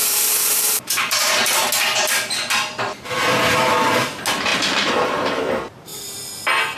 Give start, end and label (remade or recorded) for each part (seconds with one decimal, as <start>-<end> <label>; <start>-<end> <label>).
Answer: 0.0-1.7 remade; 1.7-4.5 recorded; 4.5-5.4 remade; 5.4-6.8 recorded